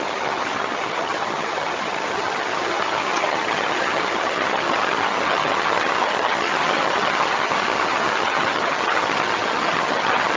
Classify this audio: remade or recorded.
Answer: remade